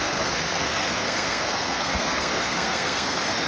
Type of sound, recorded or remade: remade